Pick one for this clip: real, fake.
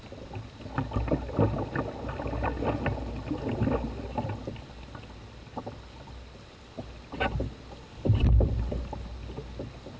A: real